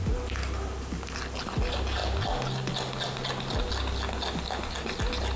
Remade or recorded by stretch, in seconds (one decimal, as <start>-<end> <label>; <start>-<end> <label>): 0.0-5.4 recorded